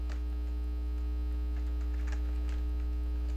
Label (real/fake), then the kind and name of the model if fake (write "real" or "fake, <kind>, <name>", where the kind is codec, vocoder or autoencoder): real